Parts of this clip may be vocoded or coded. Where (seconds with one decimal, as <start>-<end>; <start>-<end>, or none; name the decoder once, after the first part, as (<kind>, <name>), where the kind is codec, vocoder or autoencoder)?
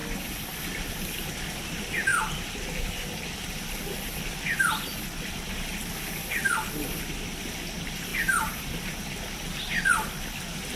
none